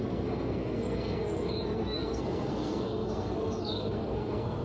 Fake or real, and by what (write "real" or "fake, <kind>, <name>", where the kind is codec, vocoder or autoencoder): fake, codec, SNAC